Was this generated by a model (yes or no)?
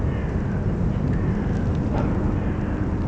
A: no